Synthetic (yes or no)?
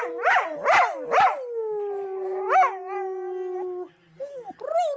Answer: no